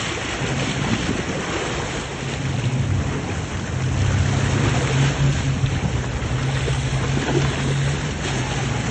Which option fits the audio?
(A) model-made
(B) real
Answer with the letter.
B